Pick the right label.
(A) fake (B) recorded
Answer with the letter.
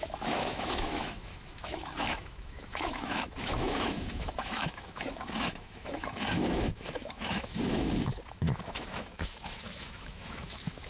A